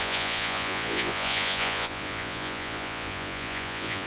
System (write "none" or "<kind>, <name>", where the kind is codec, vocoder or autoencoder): vocoder, Vocos